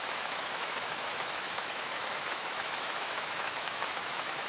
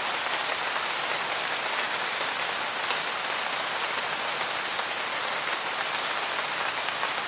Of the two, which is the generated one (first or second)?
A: first